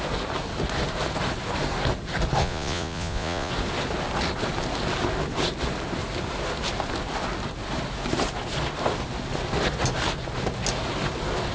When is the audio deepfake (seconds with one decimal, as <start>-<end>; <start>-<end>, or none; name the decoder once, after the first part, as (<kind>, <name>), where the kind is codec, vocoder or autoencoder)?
2.4-3.5 (vocoder, Vocos)